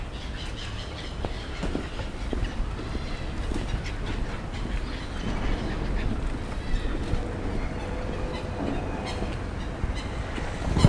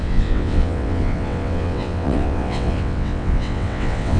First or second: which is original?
first